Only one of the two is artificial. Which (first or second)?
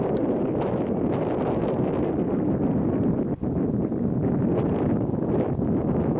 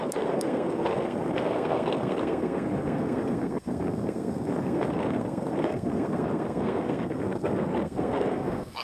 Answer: second